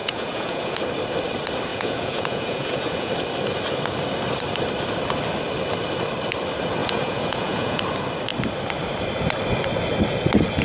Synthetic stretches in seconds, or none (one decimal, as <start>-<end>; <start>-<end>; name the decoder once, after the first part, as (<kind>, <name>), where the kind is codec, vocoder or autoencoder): 0.0-0.8 (vocoder, Vocos); 1.7-3.1; 6.8-7.8